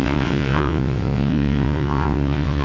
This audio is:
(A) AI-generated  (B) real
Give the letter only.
A